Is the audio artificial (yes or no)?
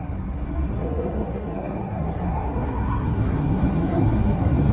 yes